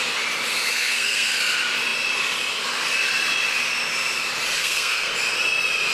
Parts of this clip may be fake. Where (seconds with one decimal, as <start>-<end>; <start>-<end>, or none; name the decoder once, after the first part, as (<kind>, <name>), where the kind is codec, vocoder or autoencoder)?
0.5-1.4 (codec, SNAC); 4.6-5.1